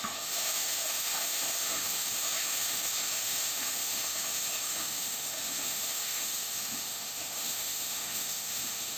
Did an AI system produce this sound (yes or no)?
yes